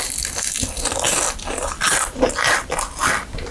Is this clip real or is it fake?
real